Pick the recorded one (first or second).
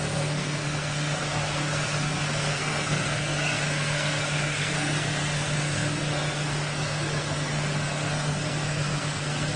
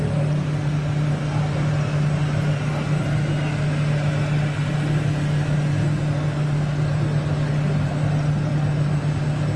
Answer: second